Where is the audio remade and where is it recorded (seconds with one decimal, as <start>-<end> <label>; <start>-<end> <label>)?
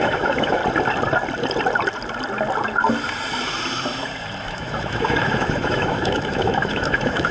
0.0-0.6 remade; 0.6-4.4 recorded; 4.4-7.3 remade